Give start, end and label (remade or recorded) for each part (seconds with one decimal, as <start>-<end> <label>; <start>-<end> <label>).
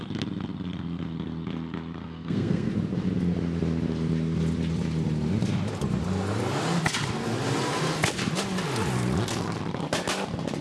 0.0-2.0 recorded; 2.0-2.7 remade; 2.7-10.6 recorded